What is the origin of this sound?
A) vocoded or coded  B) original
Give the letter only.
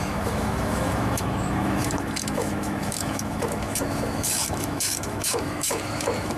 A